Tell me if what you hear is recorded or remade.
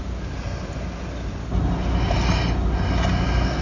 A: recorded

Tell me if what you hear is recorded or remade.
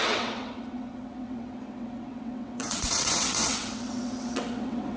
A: remade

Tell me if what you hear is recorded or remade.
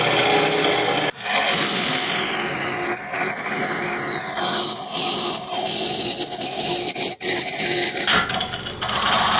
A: recorded